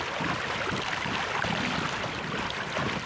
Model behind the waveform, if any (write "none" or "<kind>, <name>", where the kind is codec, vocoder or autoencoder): none